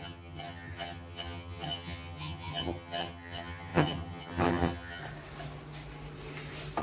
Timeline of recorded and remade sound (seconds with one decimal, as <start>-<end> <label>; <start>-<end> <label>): 0.0-5.0 remade; 5.0-6.8 recorded